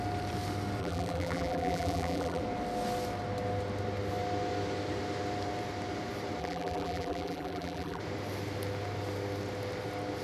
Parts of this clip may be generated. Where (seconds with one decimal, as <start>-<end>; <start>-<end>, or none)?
0.8-2.4; 6.4-8.0